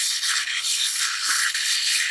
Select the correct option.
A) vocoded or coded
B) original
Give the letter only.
A